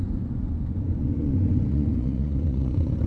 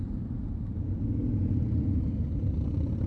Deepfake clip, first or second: first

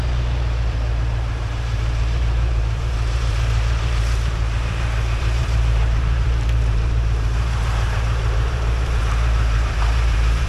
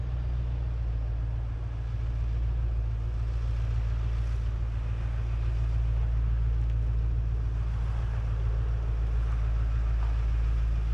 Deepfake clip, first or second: first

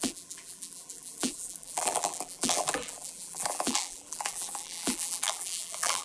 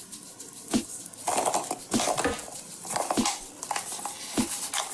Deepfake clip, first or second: first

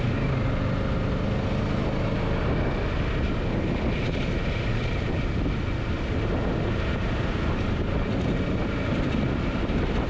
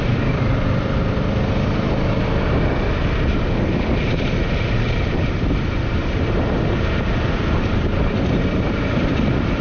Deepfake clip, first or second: second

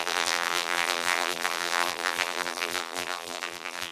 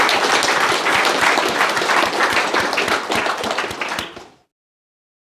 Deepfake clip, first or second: first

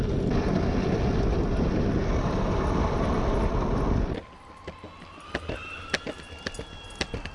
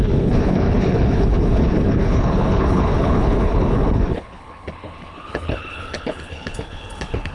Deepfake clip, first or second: second